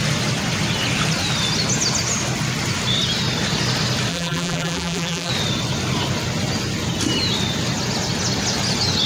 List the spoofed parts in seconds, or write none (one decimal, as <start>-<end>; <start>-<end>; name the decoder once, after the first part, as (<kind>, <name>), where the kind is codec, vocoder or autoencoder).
4.1-5.3 (vocoder, BigVGAN v2)